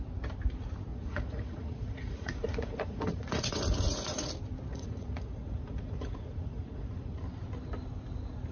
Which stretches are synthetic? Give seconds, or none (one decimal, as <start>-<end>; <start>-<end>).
0.9-4.3; 4.7-7.2